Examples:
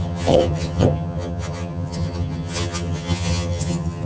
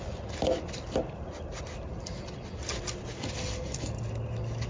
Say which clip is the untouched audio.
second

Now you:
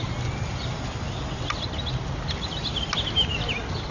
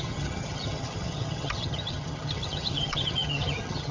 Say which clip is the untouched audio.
first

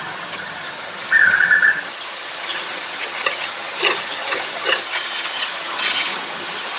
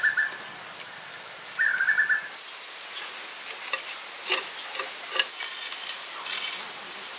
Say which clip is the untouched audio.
second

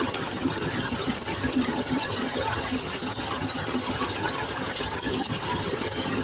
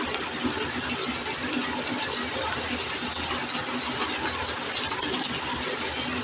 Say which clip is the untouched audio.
second